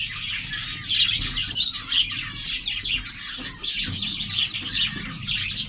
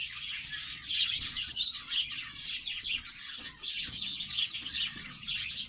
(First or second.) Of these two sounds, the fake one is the second